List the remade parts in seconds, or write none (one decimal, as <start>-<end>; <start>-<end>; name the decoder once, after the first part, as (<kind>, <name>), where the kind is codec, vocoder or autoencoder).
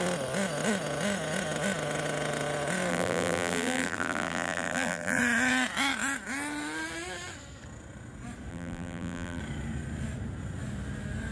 2.9-5.2 (vocoder, BigVGAN v2); 8.5-9.4